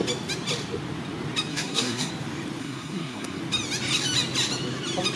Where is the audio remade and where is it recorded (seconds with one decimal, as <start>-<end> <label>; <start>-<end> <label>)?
0.0-1.5 recorded; 1.5-2.1 remade; 2.1-2.6 recorded; 2.6-3.4 remade; 3.4-5.2 recorded